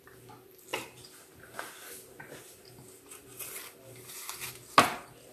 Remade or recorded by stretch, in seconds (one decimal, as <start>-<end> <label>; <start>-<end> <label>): 0.0-5.3 recorded